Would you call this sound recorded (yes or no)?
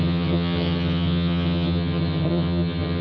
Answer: no